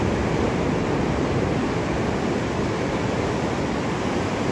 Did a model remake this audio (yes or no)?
no